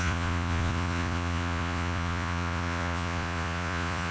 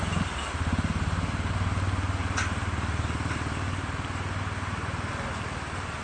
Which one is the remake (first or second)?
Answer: first